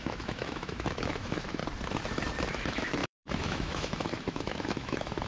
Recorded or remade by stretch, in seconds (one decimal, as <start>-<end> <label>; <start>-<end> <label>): 0.0-1.6 remade; 1.6-2.5 recorded; 2.5-5.3 remade